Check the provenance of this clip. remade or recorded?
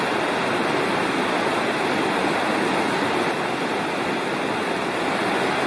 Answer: recorded